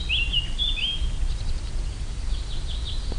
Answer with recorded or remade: recorded